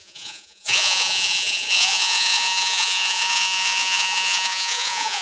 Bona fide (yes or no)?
no